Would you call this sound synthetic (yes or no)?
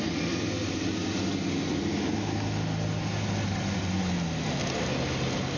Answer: no